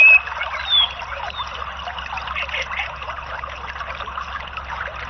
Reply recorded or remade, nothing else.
recorded